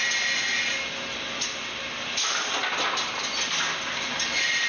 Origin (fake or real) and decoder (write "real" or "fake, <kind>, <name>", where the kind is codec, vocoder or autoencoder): real